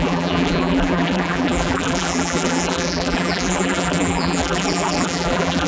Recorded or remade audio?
remade